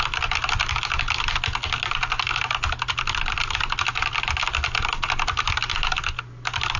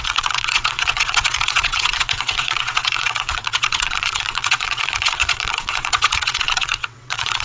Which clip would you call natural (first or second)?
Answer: first